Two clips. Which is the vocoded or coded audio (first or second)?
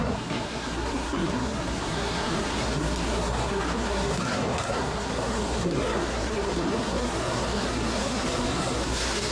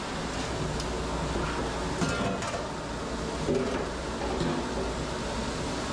first